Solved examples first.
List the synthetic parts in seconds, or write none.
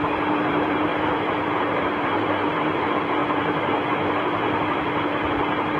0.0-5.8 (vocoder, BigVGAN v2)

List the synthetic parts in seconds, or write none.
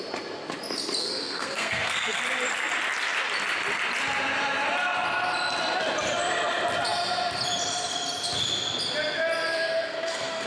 1.0-2.2 (codec, SNAC); 9.5-10.5